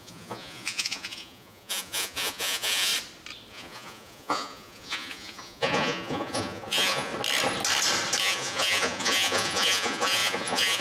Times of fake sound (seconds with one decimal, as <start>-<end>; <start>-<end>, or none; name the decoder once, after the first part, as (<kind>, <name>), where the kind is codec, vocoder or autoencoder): 0.0-2.9 (vocoder, Vocos); 3.5-7.1; 8.2-10.8